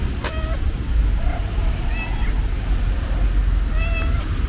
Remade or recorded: recorded